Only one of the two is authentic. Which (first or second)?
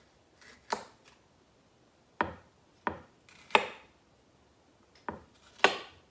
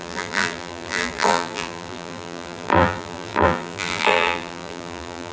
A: first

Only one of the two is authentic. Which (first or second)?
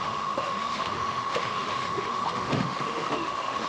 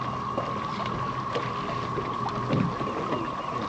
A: second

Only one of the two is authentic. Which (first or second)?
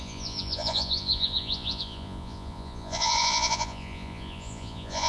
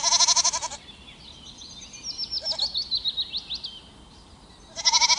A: second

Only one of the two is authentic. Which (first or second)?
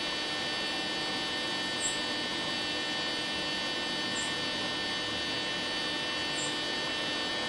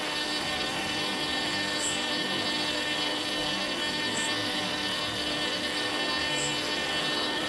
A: first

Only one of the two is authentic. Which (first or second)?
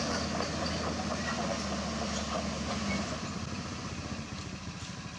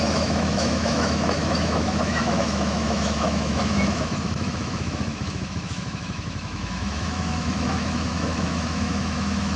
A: first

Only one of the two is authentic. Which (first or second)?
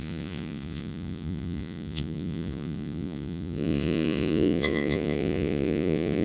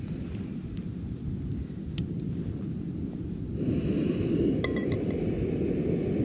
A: second